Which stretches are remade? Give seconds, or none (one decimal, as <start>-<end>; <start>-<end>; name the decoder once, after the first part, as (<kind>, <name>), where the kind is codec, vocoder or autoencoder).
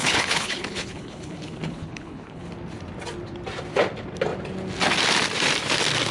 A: 0.0-2.5 (codec, HILCodec)